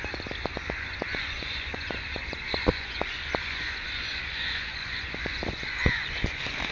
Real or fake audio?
fake